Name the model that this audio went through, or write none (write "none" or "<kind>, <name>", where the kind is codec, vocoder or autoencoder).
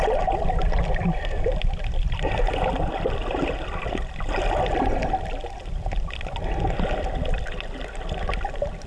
none